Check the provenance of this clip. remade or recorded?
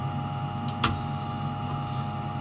recorded